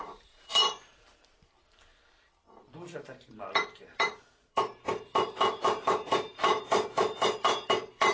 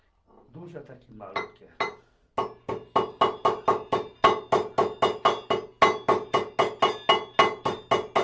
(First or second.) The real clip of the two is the second